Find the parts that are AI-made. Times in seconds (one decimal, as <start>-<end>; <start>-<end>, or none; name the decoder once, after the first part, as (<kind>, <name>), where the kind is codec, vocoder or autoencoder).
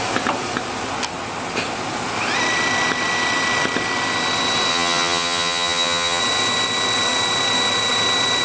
4.7-6.2 (vocoder, HiFi-GAN)